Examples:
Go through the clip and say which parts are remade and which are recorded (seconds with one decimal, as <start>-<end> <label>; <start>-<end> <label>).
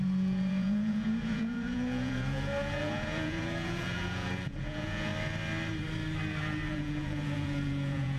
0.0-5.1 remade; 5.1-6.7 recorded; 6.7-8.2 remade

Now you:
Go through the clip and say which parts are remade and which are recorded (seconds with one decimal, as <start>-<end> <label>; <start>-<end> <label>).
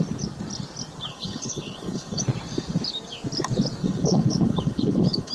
0.0-1.1 recorded; 1.1-2.2 remade; 2.2-3.8 recorded; 3.8-5.3 remade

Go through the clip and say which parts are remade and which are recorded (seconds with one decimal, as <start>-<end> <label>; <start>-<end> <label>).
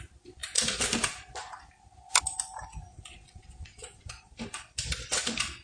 0.0-2.9 recorded; 2.9-4.3 remade; 4.3-5.6 recorded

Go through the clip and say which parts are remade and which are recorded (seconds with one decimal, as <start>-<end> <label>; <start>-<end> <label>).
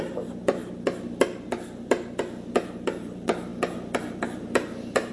0.0-0.6 remade; 0.6-3.0 recorded; 3.0-5.1 remade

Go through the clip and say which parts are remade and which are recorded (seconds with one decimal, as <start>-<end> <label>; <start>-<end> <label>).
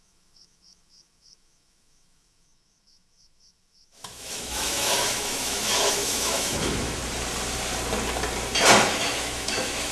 0.0-7.0 remade; 7.0-9.1 recorded; 9.1-9.9 remade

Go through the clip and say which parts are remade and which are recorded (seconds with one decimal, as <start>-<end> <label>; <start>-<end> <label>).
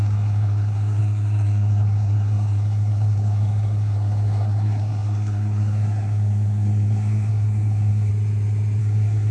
0.0-8.1 remade; 8.1-8.8 recorded; 8.8-9.3 remade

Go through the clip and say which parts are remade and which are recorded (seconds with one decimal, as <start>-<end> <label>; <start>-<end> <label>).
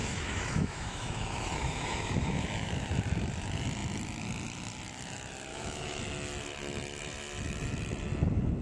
0.0-2.9 remade; 2.9-5.5 recorded; 5.5-6.0 remade; 6.0-8.6 recorded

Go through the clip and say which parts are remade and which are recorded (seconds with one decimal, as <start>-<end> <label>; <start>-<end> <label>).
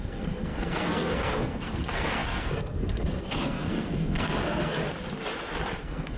0.0-4.8 remade; 4.8-5.8 recorded; 5.8-6.2 remade